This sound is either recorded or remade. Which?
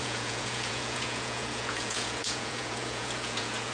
remade